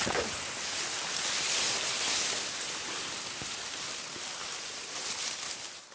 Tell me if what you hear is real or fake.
real